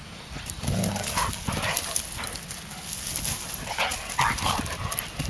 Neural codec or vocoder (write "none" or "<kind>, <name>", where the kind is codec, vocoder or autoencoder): none